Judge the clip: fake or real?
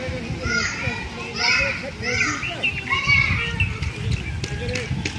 real